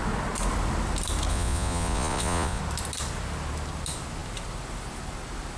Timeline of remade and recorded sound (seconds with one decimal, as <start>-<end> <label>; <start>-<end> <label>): 0.0-1.3 recorded; 1.3-2.6 remade; 2.6-5.6 recorded